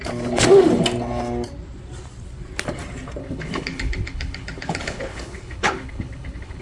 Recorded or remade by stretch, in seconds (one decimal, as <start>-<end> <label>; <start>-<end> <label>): 0.0-3.2 recorded; 3.2-6.6 remade